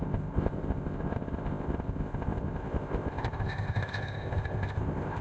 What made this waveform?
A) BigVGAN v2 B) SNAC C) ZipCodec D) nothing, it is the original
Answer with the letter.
C